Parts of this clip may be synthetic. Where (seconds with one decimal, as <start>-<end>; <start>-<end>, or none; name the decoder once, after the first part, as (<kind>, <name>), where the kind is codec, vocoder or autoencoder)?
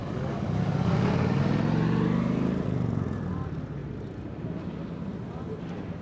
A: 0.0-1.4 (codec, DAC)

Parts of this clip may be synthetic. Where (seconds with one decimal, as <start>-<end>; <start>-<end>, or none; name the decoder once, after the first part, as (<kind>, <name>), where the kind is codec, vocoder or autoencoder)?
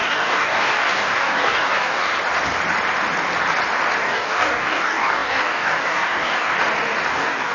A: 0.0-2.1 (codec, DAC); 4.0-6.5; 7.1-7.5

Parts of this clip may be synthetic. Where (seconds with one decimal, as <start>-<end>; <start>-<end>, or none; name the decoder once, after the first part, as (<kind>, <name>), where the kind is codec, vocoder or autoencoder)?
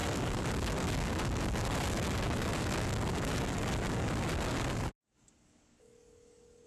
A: 0.0-6.7 (codec, DAC)